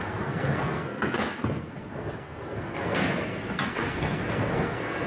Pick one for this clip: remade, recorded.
remade